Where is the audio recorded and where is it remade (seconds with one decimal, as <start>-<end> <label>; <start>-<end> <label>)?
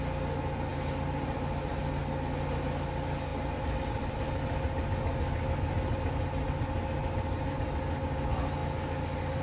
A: 0.0-0.7 recorded; 0.7-1.8 remade; 1.8-9.4 recorded